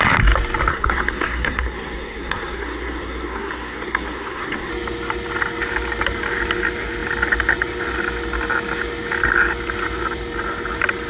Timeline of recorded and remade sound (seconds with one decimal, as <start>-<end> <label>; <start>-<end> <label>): 0.0-0.7 recorded; 0.7-4.7 remade; 4.7-11.1 recorded